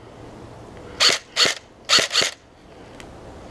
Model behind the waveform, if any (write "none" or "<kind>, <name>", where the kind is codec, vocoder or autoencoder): none